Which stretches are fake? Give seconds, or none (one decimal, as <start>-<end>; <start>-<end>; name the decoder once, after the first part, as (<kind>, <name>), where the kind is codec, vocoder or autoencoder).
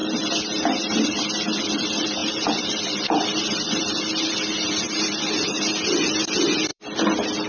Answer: 2.2-5.3 (vocoder, BigVGAN v2); 6.7-7.5